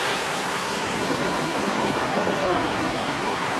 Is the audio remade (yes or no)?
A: yes